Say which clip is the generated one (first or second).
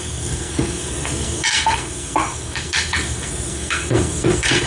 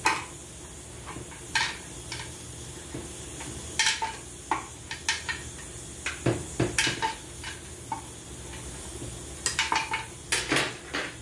first